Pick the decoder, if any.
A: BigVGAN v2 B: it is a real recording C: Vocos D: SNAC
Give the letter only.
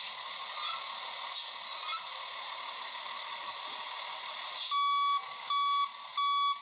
B